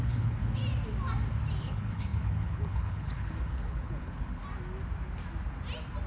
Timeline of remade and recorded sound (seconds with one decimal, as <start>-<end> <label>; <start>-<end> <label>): 0.0-0.6 remade; 0.6-1.6 recorded; 1.6-4.4 remade; 4.4-6.1 recorded